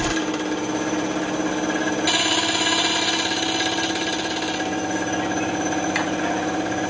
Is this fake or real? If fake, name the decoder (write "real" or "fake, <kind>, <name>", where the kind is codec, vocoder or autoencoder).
real